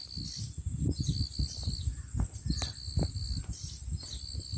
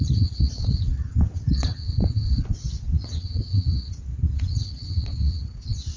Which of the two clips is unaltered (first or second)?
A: first